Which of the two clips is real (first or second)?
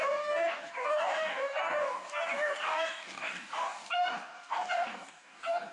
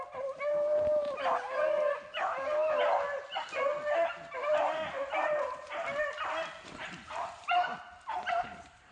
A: second